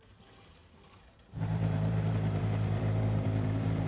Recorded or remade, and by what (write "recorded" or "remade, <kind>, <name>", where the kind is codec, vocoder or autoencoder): remade, vocoder, BigVGAN v2